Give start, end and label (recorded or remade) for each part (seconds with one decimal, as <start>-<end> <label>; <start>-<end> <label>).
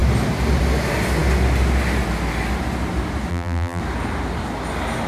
0.0-3.3 recorded; 3.3-3.8 remade; 3.8-5.1 recorded